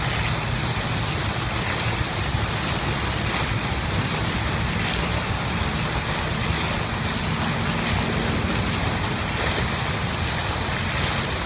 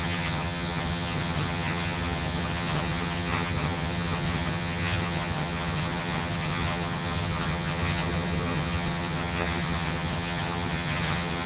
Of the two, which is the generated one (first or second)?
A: second